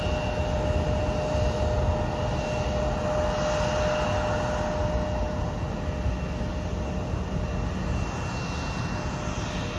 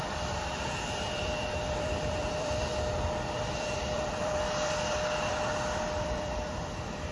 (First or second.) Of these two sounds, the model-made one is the second